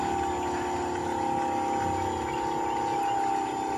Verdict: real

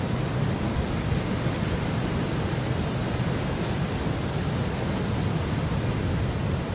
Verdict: real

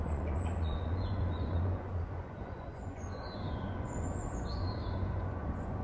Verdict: fake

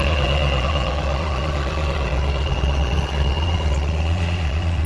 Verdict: fake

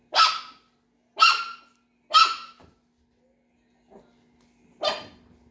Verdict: real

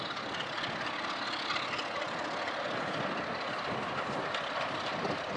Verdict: real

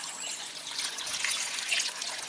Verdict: fake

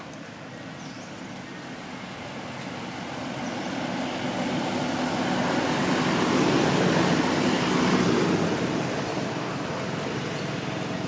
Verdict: real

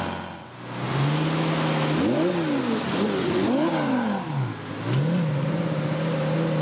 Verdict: real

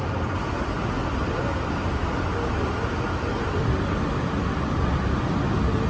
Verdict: real